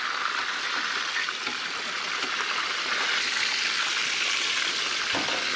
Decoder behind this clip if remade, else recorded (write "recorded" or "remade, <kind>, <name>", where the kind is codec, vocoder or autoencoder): recorded